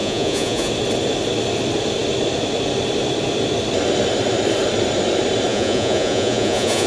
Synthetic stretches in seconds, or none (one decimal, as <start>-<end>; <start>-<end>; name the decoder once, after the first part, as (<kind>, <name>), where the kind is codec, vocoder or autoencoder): 0.0-0.7 (vocoder, Vocos); 5.5-6.9